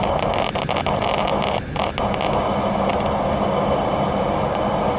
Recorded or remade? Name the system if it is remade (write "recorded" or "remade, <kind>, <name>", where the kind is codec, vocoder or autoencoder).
recorded